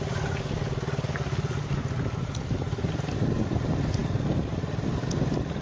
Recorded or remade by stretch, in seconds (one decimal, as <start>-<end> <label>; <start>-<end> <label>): 0.0-1.8 remade; 1.8-3.1 recorded; 3.1-4.0 remade; 4.0-4.5 recorded; 4.5-5.6 remade

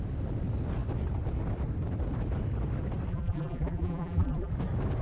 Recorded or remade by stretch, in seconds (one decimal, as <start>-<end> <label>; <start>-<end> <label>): 0.0-3.1 recorded; 3.1-4.5 remade; 4.5-5.0 recorded

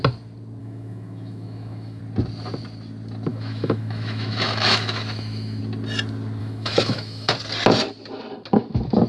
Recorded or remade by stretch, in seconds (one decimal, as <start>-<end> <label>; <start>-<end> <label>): 0.0-0.6 recorded; 0.6-2.0 remade; 2.0-3.3 recorded; 3.3-5.6 remade; 5.6-6.4 recorded; 6.4-7.3 remade; 7.3-9.1 recorded

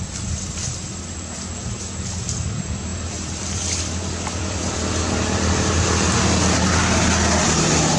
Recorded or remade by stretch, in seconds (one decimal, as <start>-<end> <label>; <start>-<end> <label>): 0.0-2.9 recorded; 2.9-4.7 remade; 4.7-8.0 recorded

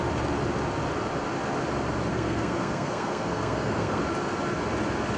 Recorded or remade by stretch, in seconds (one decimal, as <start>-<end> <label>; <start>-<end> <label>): 0.0-2.1 recorded; 2.1-4.0 remade; 4.0-5.2 recorded

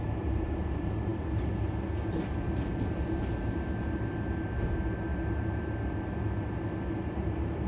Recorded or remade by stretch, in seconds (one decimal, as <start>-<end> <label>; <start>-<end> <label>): 0.0-7.7 recorded

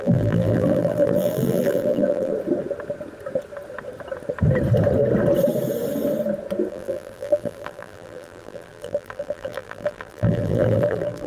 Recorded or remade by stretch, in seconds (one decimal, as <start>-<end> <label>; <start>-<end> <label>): 0.0-2.3 remade; 2.3-6.7 recorded; 6.7-11.3 remade

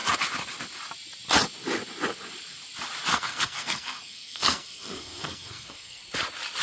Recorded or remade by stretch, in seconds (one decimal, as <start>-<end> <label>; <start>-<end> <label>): 0.0-3.1 recorded; 3.1-6.0 remade; 6.0-6.6 recorded